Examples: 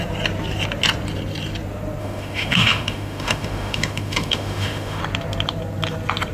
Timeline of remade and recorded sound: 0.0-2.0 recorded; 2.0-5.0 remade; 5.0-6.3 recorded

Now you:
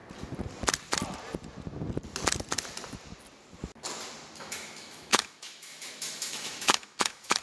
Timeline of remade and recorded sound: 0.0-4.4 recorded; 4.4-7.4 remade